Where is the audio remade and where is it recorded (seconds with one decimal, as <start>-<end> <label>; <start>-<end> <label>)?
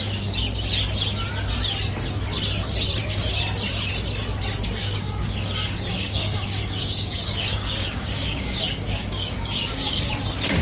0.0-4.8 recorded; 4.8-10.1 remade; 10.1-10.6 recorded